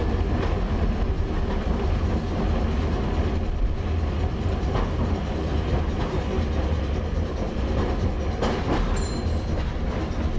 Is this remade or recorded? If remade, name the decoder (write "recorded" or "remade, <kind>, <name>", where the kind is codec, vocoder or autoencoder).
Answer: recorded